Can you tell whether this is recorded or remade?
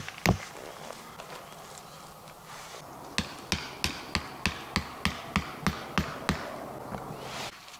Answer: recorded